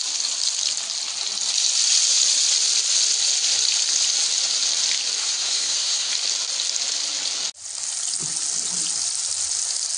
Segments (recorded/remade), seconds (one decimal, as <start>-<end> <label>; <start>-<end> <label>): 0.0-5.2 recorded; 5.2-6.1 remade; 6.1-10.0 recorded